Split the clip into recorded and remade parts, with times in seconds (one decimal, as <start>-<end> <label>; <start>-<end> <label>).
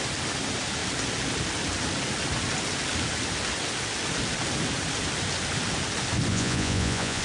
0.0-6.3 recorded; 6.3-7.2 remade